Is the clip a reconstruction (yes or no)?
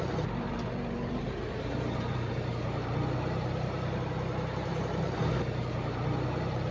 yes